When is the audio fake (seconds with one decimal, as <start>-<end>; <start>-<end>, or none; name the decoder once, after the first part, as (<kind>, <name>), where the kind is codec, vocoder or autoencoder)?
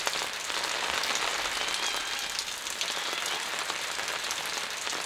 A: none